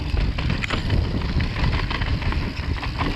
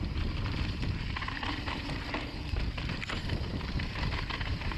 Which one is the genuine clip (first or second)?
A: first